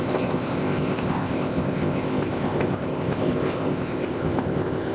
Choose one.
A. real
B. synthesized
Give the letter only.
B